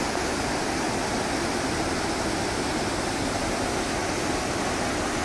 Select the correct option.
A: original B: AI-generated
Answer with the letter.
A